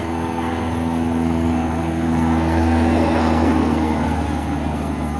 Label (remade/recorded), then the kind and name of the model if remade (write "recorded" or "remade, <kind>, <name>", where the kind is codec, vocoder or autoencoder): remade, codec, SNAC